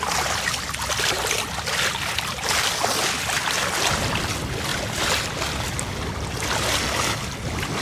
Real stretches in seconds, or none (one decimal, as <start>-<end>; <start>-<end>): 0.0-7.8